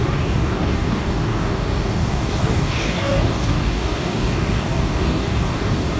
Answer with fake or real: fake